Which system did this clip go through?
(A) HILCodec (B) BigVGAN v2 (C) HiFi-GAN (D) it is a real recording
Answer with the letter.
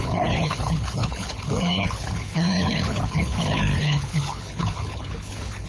A